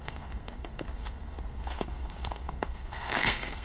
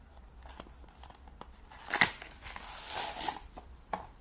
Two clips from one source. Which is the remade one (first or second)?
first